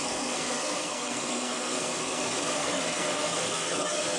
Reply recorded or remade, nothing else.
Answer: remade